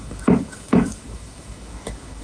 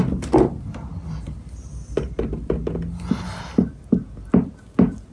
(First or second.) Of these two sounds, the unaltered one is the second